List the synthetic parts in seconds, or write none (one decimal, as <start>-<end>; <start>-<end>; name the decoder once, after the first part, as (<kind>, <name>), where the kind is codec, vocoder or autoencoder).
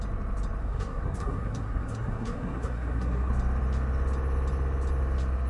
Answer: 0.6-3.3 (codec, SNAC)